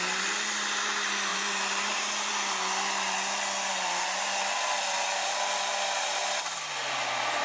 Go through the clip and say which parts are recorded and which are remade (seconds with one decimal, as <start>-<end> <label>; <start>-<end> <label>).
0.0-1.3 recorded; 1.3-2.3 remade; 2.3-7.4 recorded